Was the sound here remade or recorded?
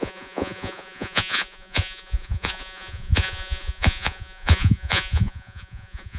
remade